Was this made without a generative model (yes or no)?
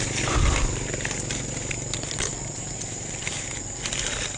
yes